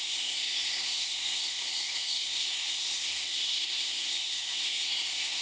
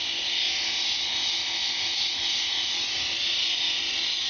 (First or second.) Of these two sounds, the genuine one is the second